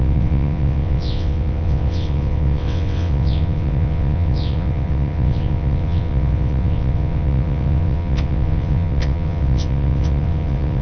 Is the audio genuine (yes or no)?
no